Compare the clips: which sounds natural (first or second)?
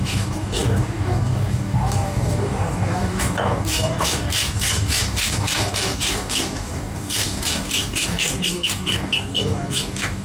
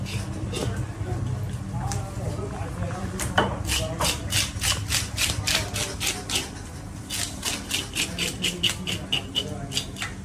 second